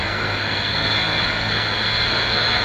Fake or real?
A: fake